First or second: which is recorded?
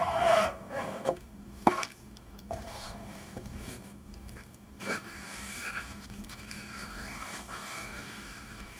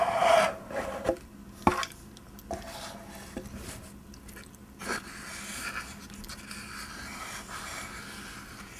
second